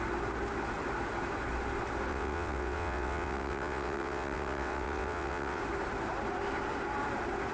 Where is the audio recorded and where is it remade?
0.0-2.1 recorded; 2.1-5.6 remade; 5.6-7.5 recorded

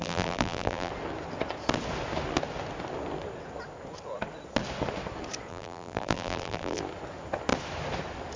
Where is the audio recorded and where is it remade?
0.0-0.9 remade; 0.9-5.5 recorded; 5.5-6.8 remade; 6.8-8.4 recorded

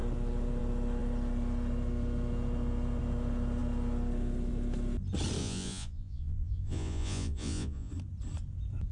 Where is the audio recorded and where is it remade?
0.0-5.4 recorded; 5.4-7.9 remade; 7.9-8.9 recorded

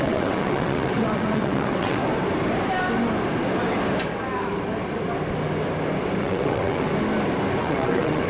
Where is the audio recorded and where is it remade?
0.0-2.0 remade; 2.0-6.2 recorded; 6.2-6.9 remade; 6.9-7.6 recorded; 7.6-8.3 remade

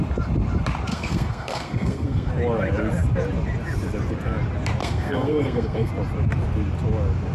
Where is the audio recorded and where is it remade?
0.0-0.9 recorded; 0.9-2.3 remade; 2.3-4.8 recorded; 4.8-5.9 remade; 5.9-7.3 recorded

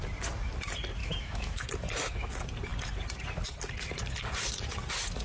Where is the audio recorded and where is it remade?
0.0-1.0 recorded; 1.0-1.7 remade; 1.7-5.2 recorded

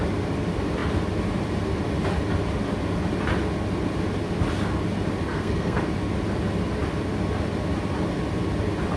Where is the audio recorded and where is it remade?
0.0-5.3 recorded; 5.3-5.8 remade; 5.8-9.0 recorded

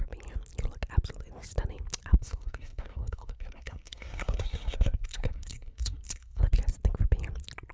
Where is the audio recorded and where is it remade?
0.0-2.2 recorded; 2.2-6.4 remade; 6.4-7.7 recorded